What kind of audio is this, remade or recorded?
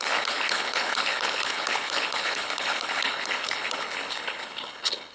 remade